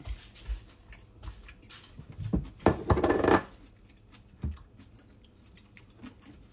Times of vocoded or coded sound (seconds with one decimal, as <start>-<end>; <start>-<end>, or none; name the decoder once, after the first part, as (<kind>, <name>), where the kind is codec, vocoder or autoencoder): none